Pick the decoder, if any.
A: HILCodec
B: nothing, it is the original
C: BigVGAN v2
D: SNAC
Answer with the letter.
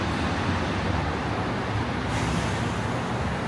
B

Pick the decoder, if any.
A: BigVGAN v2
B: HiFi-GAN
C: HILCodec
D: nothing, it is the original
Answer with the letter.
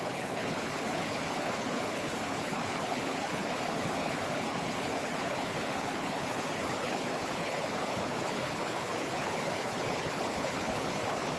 C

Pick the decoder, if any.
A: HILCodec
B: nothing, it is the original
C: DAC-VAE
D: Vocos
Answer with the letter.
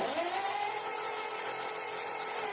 B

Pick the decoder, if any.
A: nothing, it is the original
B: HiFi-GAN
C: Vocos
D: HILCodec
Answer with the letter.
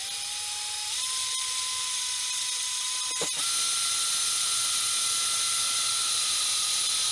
A